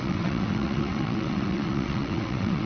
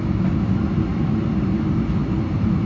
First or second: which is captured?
second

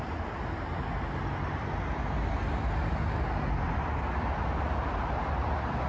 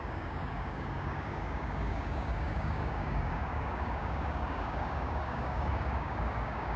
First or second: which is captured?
first